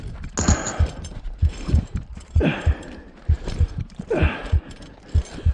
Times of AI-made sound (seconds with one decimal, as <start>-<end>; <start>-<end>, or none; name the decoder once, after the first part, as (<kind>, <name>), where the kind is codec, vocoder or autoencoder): 1.1-4.4 (vocoder, BigVGAN v2)